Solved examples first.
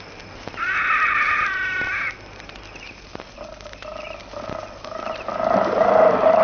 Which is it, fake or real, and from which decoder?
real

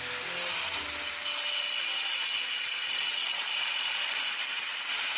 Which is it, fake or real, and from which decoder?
real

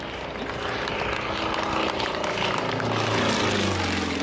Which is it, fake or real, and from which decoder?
real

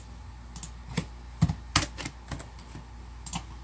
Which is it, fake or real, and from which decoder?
real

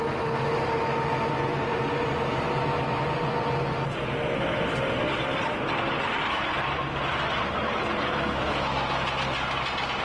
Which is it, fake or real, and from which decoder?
real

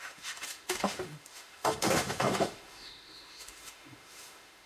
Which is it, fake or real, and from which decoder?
fake, autoencoder, DAC-VAE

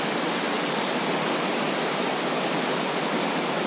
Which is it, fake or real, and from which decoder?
real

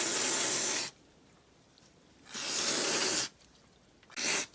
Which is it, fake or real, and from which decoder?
real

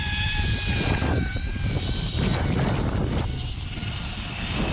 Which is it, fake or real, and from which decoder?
real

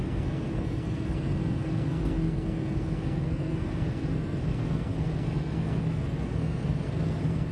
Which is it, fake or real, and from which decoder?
fake, codec, SNAC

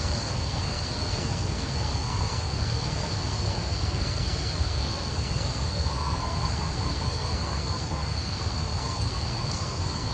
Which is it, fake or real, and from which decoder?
fake, codec, SNAC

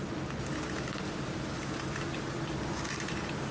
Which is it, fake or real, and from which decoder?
real